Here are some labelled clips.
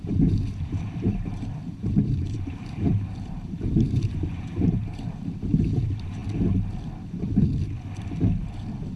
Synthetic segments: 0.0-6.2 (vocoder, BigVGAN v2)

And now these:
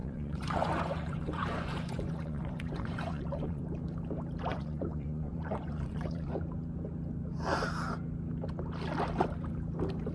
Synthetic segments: 0.0-3.6 (vocoder, Vocos); 4.5-6.3

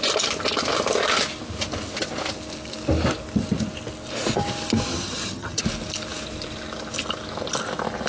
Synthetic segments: 4.9-5.6 (vocoder, HiFi-GAN)

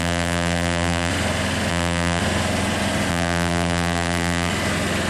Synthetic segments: 0.0-1.1 (vocoder, BigVGAN v2); 1.7-2.2; 3.1-4.5

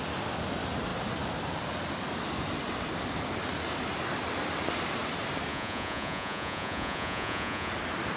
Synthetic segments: 5.5-7.7 (vocoder, Vocos)

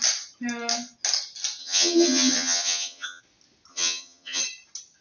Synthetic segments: 1.6-3.2 (vocoder, HiFi-GAN); 3.7-4.4

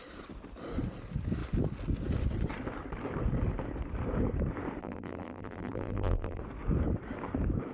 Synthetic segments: 4.8-6.4 (vocoder, BigVGAN v2)

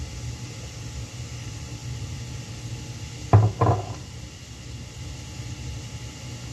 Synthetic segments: 1.8-2.7 (vocoder, BigVGAN v2)